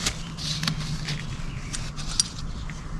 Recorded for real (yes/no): yes